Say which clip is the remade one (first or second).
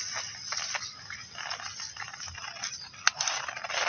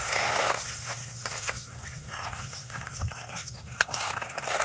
second